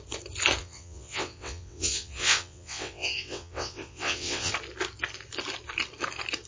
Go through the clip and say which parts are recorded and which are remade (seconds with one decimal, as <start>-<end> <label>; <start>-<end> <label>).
0.0-0.6 recorded; 0.6-4.5 remade; 4.5-6.5 recorded

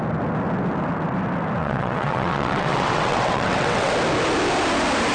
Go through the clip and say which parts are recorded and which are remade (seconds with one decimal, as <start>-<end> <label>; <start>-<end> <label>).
0.0-1.6 recorded; 1.6-3.9 remade; 3.9-5.1 recorded

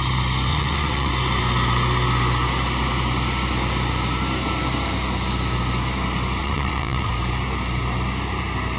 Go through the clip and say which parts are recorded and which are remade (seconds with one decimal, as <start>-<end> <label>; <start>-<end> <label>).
0.0-0.5 recorded; 0.5-1.1 remade; 1.1-6.4 recorded; 6.4-7.1 remade; 7.1-8.8 recorded

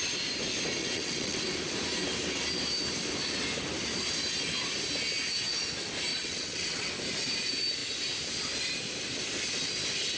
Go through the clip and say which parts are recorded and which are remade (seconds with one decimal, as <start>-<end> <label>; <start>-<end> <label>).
0.0-0.8 recorded; 0.8-1.4 remade; 1.4-6.1 recorded; 6.1-6.9 remade; 6.9-10.2 recorded

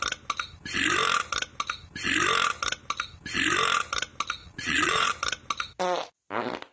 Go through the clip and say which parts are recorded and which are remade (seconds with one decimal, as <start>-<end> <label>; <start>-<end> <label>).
0.0-4.4 recorded; 4.4-5.1 remade; 5.1-6.7 recorded